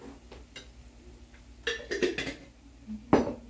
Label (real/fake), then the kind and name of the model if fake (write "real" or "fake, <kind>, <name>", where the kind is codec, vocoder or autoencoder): real